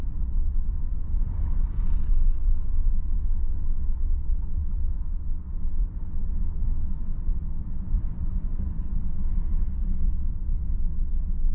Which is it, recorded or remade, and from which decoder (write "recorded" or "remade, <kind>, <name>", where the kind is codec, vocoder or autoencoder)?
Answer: remade, vocoder, WaveNeXt